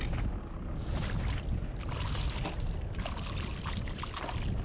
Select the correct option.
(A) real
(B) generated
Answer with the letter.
A